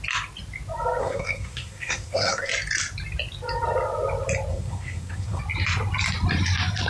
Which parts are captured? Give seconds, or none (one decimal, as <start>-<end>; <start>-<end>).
0.0-1.0; 2.5-4.5; 5.4-6.9

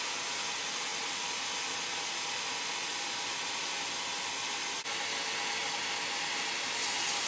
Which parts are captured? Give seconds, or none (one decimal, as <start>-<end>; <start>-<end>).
0.0-7.3

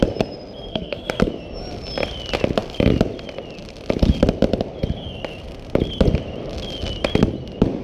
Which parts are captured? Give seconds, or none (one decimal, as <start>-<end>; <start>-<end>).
0.0-0.7; 1.3-7.8

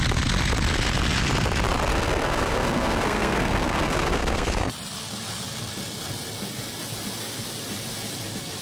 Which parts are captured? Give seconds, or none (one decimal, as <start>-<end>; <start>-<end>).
0.0-1.9; 4.7-8.6

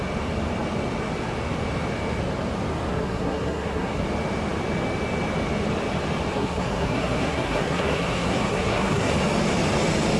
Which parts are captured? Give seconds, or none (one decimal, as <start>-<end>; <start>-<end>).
0.0-2.9; 4.0-6.3; 9.1-10.2